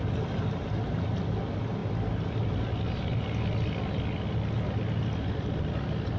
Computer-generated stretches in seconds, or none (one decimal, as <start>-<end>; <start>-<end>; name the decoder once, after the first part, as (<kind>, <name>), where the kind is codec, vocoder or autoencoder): none